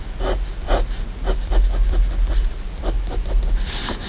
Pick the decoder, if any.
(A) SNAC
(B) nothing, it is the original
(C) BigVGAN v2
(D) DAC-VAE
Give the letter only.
B